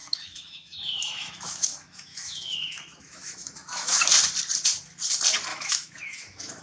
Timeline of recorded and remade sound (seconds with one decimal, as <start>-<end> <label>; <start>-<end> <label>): 0.0-4.0 remade; 4.0-5.5 recorded; 5.5-6.6 remade